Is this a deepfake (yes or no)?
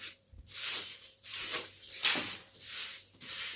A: yes